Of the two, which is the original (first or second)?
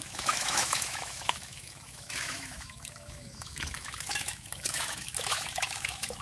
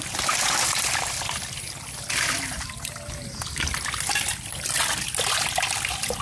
second